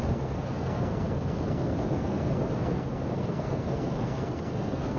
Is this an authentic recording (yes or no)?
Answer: no